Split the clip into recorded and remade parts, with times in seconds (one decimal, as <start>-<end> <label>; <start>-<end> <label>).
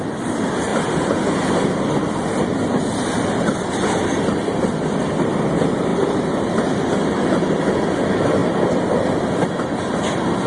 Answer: 0.0-0.7 remade; 0.7-1.9 recorded; 1.9-10.5 remade